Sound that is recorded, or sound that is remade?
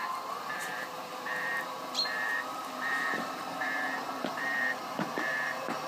remade